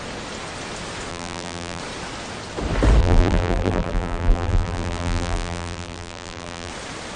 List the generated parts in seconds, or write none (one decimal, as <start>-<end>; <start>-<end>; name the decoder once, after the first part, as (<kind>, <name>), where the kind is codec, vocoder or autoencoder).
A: 1.1-1.8 (vocoder, BigVGAN v2); 3.0-6.7